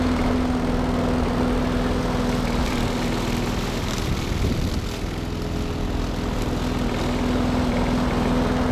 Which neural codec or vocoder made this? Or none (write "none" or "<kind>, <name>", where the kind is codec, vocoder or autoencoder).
none